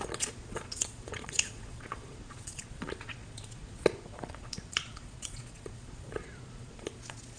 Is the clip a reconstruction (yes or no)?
yes